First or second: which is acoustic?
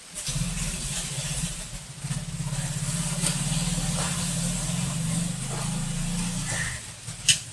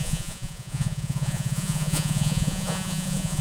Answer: first